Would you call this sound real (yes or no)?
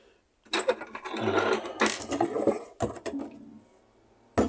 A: yes